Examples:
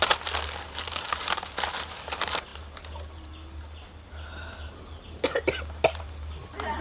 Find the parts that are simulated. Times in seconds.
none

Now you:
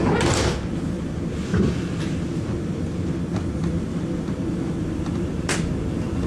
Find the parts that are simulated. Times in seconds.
none

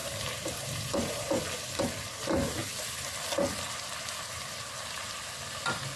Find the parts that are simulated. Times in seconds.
0.0-1.3 (vocoder, BigVGAN v2)

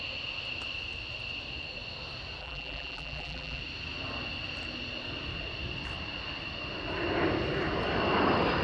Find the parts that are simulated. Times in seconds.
2.4-3.6 (vocoder, BigVGAN v2)